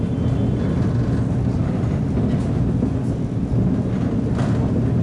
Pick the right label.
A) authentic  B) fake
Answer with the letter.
A